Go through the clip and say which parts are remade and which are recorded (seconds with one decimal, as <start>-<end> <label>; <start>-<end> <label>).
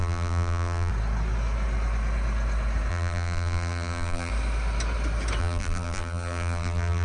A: 0.0-0.9 remade; 0.9-2.9 recorded; 2.9-4.3 remade; 4.3-5.4 recorded; 5.4-7.0 remade